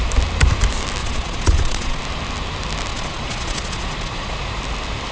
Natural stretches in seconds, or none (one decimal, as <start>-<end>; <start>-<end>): 0.0-1.0; 2.0-2.9; 4.3-5.1